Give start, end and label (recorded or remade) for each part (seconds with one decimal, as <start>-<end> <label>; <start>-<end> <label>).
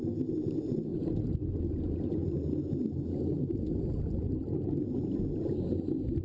0.0-6.2 recorded